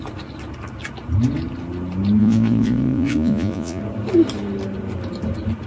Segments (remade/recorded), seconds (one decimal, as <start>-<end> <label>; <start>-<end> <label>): 0.0-2.2 recorded; 2.2-3.8 remade; 3.8-5.7 recorded